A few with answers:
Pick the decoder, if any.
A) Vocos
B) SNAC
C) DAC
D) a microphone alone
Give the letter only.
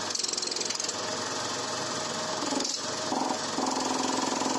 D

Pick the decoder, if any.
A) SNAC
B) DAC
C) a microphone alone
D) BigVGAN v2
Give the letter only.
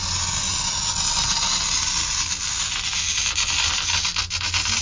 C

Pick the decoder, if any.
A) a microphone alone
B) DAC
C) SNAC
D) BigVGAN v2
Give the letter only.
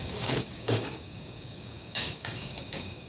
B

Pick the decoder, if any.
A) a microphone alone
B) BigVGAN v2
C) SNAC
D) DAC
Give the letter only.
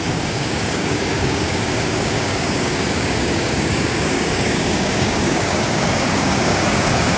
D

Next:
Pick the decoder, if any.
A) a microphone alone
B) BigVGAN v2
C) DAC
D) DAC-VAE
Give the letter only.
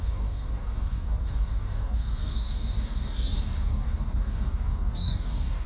C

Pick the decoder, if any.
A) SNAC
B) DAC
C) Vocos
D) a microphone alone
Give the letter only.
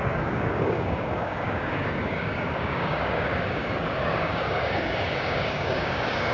B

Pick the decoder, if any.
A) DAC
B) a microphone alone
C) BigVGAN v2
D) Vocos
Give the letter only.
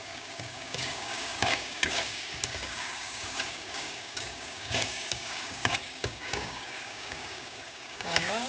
A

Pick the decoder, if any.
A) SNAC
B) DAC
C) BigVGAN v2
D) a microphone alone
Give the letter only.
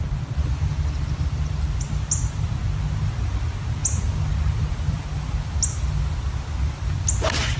D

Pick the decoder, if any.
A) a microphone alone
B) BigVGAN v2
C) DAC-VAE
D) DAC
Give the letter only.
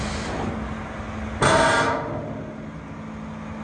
A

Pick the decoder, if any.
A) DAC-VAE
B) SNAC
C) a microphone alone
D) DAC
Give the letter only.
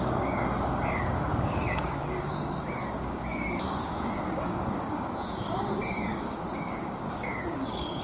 D